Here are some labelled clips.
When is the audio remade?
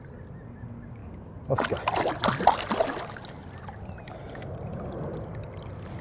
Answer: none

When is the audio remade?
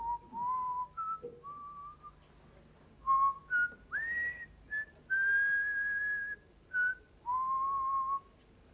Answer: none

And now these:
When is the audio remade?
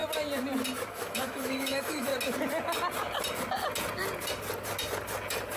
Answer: 0.9-2.1 (autoencoder, DAC-VAE)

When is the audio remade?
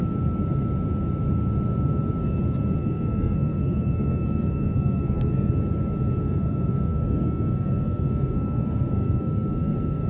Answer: 2.8-5.5 (codec, SNAC); 6.2-10.1